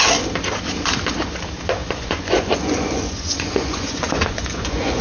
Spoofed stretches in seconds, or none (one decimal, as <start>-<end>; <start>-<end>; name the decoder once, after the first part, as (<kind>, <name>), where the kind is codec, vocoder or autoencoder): 1.8-5.0 (vocoder, Vocos)